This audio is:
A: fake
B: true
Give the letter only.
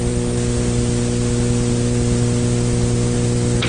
B